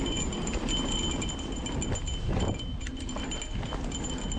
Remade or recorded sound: recorded